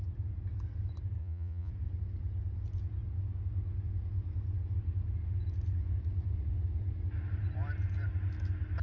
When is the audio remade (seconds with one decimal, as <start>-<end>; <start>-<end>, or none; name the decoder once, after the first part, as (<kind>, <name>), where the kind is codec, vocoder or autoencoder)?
1.2-1.7 (vocoder, Vocos)